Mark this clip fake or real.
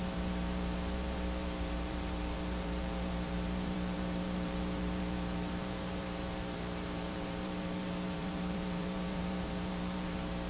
fake